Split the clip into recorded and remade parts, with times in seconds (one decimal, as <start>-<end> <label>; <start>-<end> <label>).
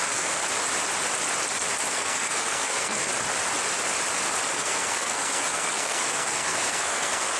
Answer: 0.0-0.4 remade; 0.4-1.9 recorded; 1.9-3.1 remade; 3.1-4.5 recorded; 4.5-7.4 remade